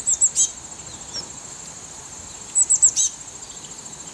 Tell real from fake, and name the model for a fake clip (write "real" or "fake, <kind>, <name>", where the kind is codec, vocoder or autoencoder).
real